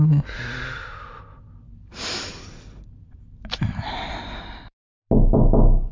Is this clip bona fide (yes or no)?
yes